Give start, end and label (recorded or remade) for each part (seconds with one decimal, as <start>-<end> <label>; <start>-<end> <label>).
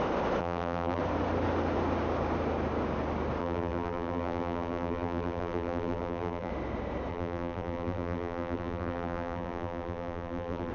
0.0-0.4 recorded; 0.4-1.0 remade; 1.0-3.4 recorded; 3.4-6.5 remade; 6.5-7.1 recorded; 7.1-10.7 remade